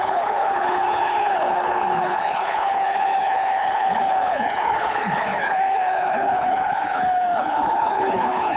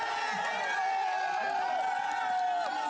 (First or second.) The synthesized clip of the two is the first